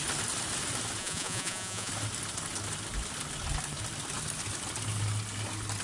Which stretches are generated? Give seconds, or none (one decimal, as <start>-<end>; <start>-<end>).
1.0-1.9